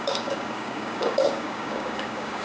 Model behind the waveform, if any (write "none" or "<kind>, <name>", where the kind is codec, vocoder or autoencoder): codec, DAC